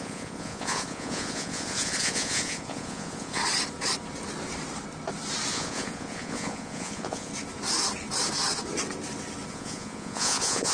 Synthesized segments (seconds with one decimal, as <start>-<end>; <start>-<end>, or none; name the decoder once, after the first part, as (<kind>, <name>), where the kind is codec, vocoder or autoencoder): 0.0-3.4 (vocoder, Vocos); 5.5-7.3; 9.5-10.7